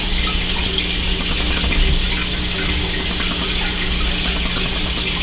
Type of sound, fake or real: real